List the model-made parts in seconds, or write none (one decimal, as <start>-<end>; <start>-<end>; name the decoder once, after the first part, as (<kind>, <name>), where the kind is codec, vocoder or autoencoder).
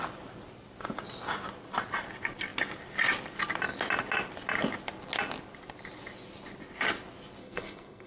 7.4-8.1 (codec, SNAC)